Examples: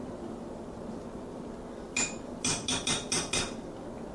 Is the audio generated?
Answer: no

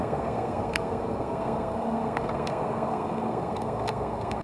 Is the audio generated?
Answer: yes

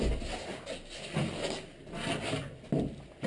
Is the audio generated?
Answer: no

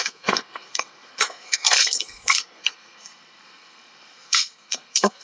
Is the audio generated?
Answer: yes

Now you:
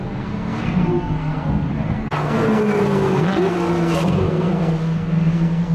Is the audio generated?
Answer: yes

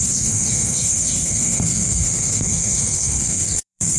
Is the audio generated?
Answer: yes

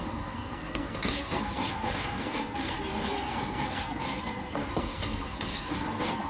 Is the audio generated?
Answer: yes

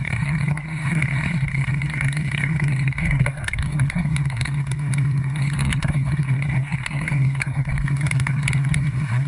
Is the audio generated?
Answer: yes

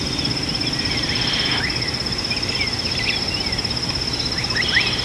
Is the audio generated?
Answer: no